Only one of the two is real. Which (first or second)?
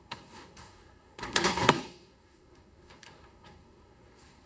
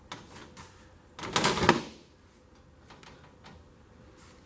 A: second